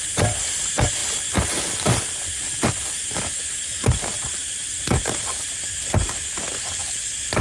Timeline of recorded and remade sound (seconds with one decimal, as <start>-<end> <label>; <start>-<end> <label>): 0.0-1.0 recorded; 1.0-2.0 remade; 2.0-3.8 recorded; 3.8-5.5 remade; 5.5-7.4 recorded